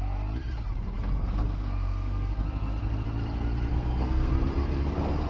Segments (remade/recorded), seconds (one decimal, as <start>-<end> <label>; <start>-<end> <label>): 0.0-1.2 recorded; 1.2-2.8 remade; 2.8-3.7 recorded; 3.7-4.3 remade; 4.3-5.3 recorded